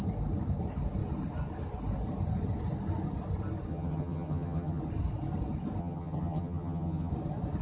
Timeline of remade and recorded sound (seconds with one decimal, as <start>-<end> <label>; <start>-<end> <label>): 0.0-3.7 recorded; 3.7-4.8 remade; 4.8-5.8 recorded; 5.8-7.1 remade; 7.1-7.6 recorded